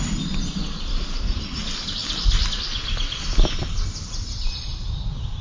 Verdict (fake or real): real